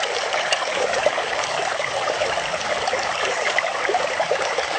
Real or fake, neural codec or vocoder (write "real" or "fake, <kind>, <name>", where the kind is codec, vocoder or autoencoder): fake, codec, DAC